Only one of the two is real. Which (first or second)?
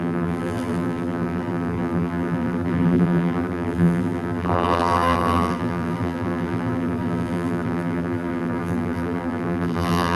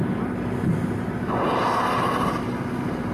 second